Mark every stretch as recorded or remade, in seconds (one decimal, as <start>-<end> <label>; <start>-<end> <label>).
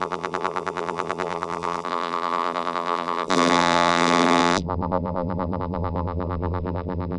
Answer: 0.0-7.2 remade